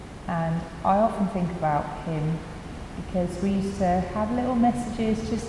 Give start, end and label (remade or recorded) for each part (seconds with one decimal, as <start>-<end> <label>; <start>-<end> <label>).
0.0-5.5 recorded